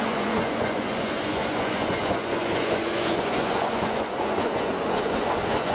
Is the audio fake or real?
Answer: fake